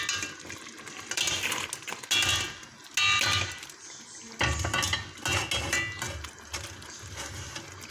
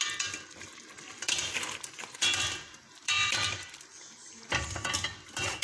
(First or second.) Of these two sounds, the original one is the first